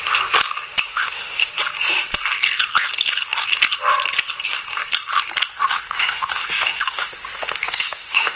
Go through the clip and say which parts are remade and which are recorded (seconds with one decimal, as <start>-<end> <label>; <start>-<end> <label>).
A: 0.0-0.9 recorded; 0.9-1.5 remade; 1.5-5.5 recorded; 5.5-8.4 remade